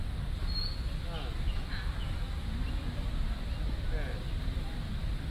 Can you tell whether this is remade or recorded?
recorded